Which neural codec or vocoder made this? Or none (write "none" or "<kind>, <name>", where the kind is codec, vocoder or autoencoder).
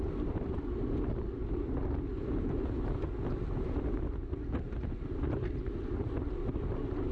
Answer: none